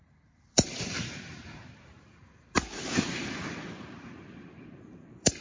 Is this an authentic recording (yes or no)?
no